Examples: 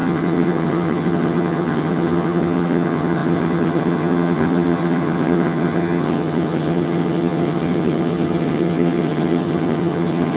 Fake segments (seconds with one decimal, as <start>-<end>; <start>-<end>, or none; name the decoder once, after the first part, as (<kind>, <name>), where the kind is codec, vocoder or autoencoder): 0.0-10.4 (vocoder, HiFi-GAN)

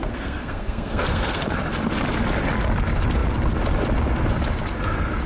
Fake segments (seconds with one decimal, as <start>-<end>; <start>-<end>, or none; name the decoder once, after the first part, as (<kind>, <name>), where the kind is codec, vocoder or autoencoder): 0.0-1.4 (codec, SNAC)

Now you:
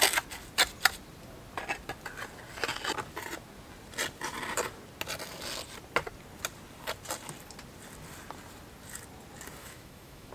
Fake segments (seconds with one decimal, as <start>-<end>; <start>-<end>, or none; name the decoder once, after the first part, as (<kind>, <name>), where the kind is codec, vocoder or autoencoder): 9.6-10.3 (autoencoder, DAC-VAE)